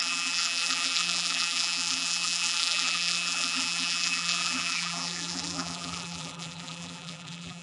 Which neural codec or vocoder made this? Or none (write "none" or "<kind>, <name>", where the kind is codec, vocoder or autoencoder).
vocoder, BigVGAN v2